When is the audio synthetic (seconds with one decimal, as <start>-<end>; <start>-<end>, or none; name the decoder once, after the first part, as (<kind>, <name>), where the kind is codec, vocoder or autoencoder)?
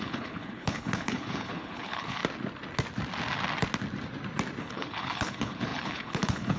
0.0-2.2 (codec, HILCodec); 4.6-6.6